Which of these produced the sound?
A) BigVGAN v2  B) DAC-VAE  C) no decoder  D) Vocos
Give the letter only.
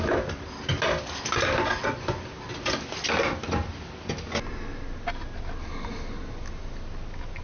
C